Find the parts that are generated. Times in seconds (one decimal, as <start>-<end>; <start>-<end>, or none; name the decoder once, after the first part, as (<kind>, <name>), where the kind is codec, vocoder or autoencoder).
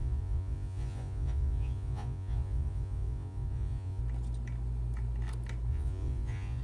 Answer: 0.0-4.0 (vocoder, Vocos); 5.7-6.6